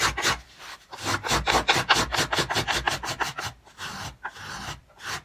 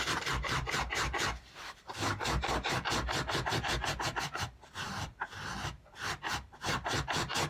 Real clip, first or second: first